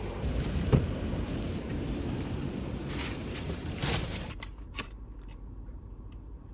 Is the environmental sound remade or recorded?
remade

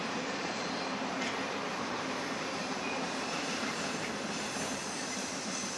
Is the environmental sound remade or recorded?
remade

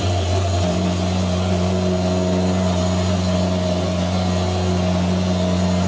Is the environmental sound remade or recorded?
recorded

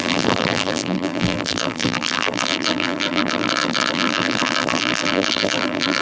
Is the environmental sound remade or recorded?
remade